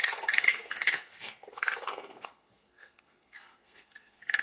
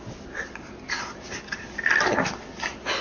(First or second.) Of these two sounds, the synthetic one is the first